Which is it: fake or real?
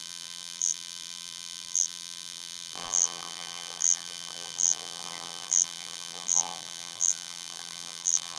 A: fake